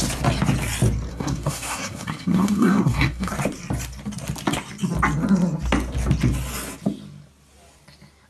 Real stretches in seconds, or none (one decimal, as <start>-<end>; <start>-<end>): 0.0-1.1; 3.3-8.3